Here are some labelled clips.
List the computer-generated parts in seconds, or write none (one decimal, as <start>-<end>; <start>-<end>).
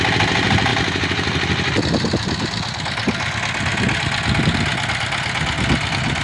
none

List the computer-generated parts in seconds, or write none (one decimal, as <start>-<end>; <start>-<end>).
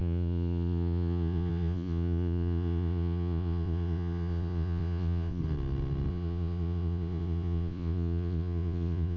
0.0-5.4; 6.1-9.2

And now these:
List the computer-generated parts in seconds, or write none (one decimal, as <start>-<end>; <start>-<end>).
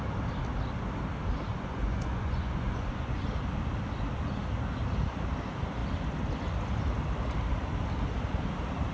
1.5-3.3